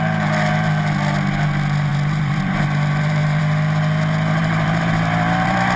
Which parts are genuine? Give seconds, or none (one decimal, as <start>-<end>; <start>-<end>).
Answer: 0.0-1.9; 3.4-4.4